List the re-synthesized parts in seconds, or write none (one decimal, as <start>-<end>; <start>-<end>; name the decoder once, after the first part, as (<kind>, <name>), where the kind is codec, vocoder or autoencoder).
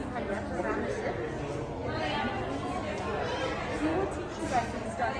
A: none